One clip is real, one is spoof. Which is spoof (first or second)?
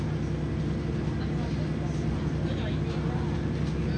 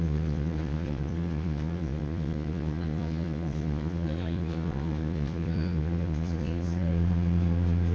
second